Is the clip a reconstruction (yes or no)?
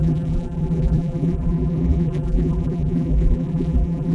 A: yes